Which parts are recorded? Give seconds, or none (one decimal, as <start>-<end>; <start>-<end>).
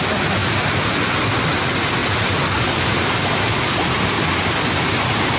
0.0-5.4